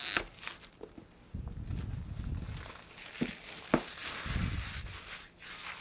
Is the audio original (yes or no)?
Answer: yes